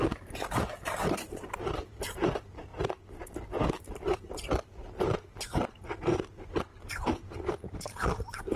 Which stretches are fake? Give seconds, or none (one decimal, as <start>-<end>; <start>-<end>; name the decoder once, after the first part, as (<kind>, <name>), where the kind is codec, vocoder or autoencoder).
0.0-2.7 (vocoder, BigVGAN v2); 3.8-8.6